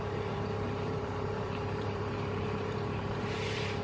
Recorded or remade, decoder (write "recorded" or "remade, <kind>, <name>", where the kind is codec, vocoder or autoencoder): remade, vocoder, BigVGAN v2